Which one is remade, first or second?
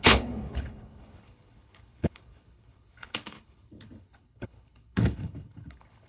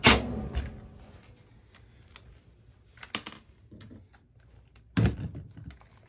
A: first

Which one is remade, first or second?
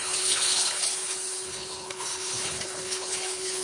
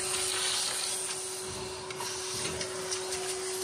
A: first